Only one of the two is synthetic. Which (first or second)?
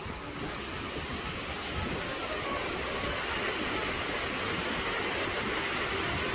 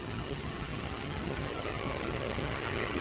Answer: second